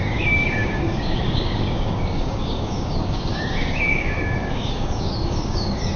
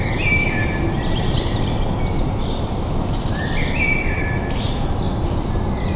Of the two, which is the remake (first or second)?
first